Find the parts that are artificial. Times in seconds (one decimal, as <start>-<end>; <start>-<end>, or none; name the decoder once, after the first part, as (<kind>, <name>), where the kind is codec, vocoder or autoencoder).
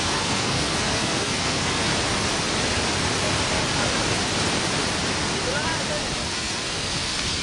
0.0-1.9 (codec, SNAC); 6.3-7.4